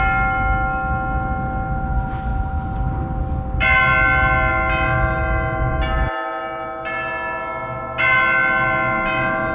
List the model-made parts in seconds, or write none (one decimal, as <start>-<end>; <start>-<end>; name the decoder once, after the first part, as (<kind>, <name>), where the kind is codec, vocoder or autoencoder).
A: none